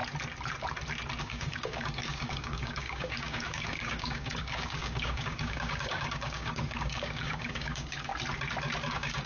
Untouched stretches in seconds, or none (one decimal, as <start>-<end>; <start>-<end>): 0.0-1.2; 8.1-8.9

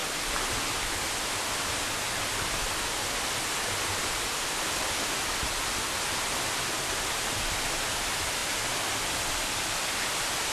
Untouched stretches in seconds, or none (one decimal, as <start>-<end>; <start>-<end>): 0.0-10.5

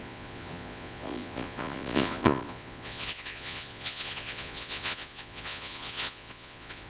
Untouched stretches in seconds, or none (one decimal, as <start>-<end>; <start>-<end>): none